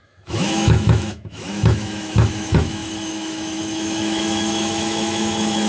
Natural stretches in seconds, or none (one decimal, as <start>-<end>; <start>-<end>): none